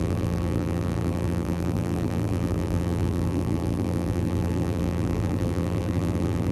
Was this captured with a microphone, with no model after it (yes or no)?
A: no